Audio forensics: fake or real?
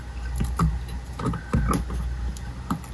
real